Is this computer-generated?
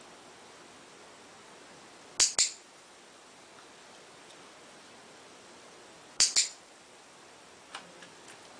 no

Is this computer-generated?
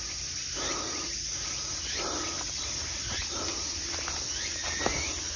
no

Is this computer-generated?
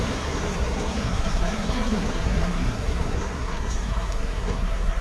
yes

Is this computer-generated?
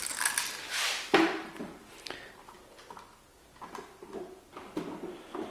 no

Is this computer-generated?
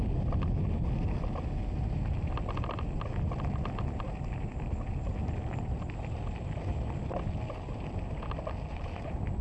no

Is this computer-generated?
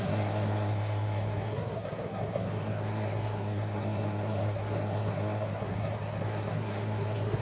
yes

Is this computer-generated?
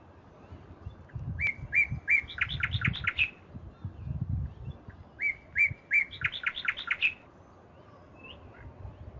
no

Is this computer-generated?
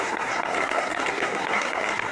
yes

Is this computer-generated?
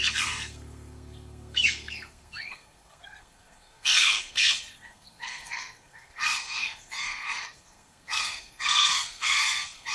yes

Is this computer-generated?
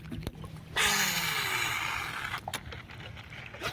no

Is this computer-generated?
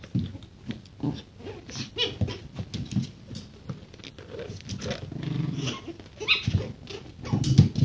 no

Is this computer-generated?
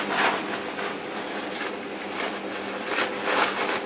no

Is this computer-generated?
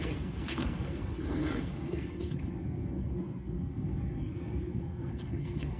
yes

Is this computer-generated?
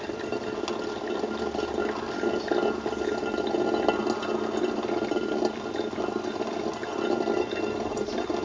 no